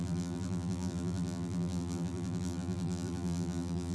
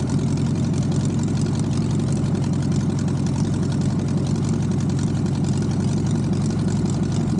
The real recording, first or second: second